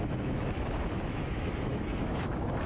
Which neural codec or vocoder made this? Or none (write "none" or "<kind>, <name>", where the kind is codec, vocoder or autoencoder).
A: autoencoder, DAC-VAE